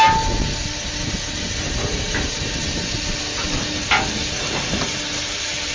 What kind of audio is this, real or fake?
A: real